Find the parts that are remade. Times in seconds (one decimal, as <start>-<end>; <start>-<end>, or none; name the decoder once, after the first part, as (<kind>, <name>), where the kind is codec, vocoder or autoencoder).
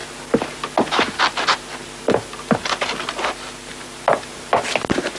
none